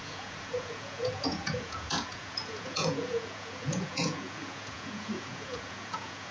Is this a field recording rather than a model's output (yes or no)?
no